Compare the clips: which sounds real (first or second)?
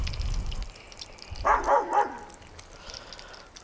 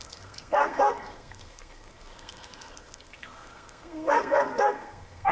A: first